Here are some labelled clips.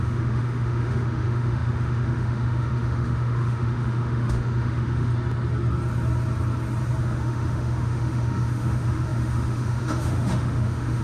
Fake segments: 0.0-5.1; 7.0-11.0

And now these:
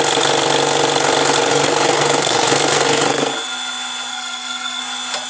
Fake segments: 1.5-3.3; 4.1-4.8

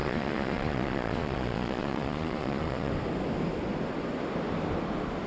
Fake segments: 0.0-2.9

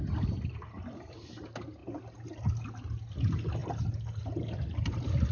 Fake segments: none

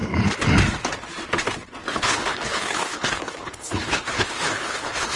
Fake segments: 1.9-5.2